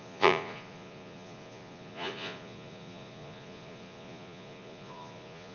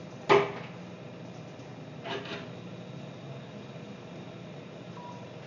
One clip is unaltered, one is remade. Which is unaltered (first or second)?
second